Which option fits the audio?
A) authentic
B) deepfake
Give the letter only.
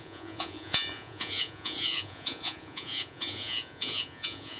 B